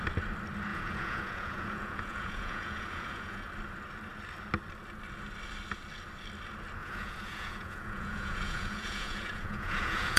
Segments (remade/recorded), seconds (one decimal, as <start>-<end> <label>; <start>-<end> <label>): 0.0-0.7 recorded; 0.7-3.5 remade; 3.5-6.8 recorded; 6.8-10.2 remade